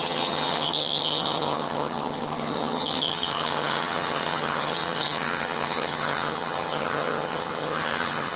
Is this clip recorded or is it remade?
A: remade